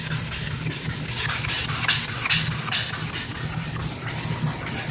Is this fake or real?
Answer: real